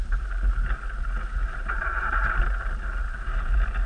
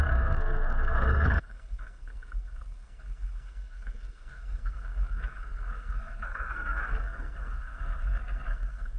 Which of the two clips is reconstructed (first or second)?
second